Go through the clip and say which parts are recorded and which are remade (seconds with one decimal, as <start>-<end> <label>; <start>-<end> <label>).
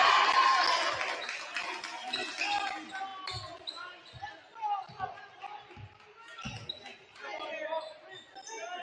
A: 0.0-8.8 recorded